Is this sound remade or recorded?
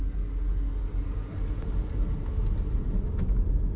recorded